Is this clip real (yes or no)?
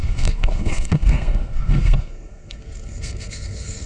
no